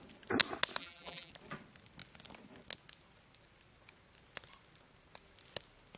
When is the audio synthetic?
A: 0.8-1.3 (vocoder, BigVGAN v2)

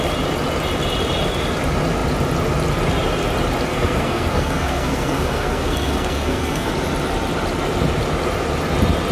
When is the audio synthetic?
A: 3.7-6.7 (codec, SNAC)

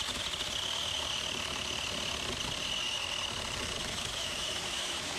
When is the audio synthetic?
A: 3.8-5.2 (autoencoder, DAC-VAE)

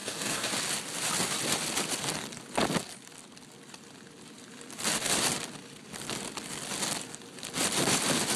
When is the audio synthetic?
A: 0.0-0.5 (codec, DAC)

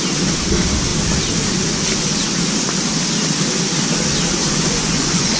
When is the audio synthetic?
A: 4.4-5.4 (vocoder, Vocos)

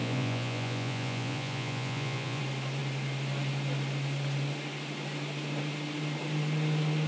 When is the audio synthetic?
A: 0.0-2.4 (vocoder, Vocos)

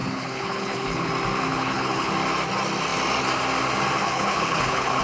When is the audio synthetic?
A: 0.0-1.1 (codec, HILCodec); 1.5-2.1; 4.0-5.0